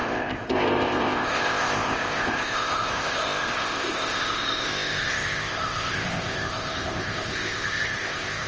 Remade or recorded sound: remade